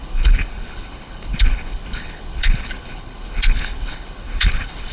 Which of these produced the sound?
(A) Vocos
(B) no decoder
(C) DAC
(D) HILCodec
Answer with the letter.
D